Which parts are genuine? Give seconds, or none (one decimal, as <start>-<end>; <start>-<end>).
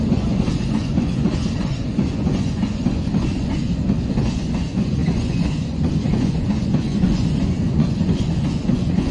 none